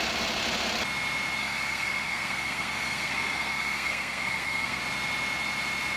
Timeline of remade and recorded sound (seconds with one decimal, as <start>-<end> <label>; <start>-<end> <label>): 0.0-1.4 recorded; 1.4-4.8 remade; 4.8-6.0 recorded